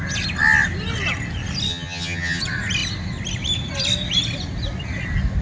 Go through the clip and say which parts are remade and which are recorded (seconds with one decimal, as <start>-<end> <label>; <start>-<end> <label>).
0.0-1.7 recorded; 1.7-2.4 remade; 2.4-5.4 recorded